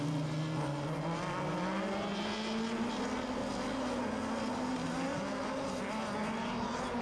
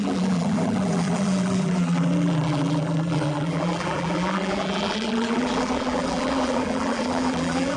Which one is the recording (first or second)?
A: first